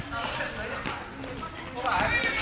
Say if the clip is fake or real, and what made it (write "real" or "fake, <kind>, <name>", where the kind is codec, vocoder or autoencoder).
real